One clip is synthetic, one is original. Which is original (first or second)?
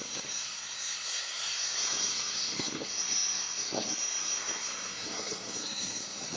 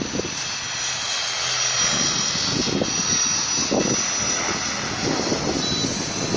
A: second